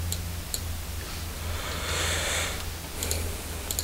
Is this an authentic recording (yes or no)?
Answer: yes